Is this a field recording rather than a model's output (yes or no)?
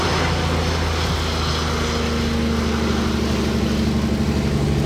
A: yes